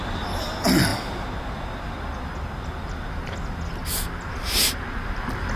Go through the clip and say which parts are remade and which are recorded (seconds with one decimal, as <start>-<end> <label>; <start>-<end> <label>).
0.0-5.6 recorded